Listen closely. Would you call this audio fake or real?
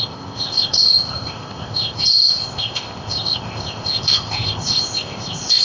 fake